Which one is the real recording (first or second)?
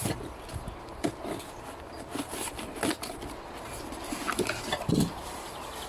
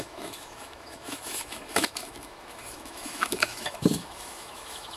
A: first